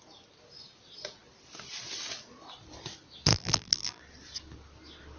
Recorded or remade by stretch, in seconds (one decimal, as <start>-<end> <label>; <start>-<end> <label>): 0.0-3.3 recorded; 3.3-4.0 remade; 4.0-5.2 recorded